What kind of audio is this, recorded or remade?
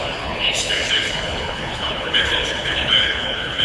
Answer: remade